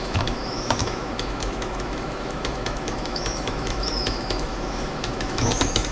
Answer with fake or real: fake